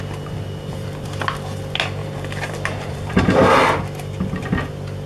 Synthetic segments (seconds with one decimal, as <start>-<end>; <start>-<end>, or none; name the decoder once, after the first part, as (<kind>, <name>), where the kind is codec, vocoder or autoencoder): 2.0-3.7 (vocoder, BigVGAN v2)